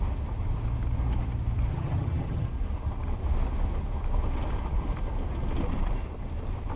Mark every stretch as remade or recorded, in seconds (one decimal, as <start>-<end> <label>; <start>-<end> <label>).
0.0-1.7 recorded; 1.7-2.5 remade; 2.5-6.8 recorded